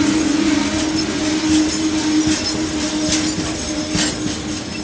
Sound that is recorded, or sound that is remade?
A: recorded